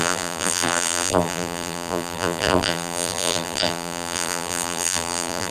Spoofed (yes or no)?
yes